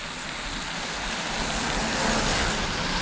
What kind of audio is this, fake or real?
real